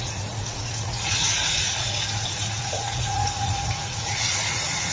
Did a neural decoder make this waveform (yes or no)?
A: yes